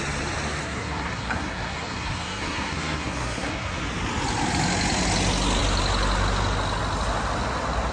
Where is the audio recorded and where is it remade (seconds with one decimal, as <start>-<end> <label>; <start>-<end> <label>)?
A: 0.0-0.6 recorded; 0.6-3.8 remade; 3.8-7.9 recorded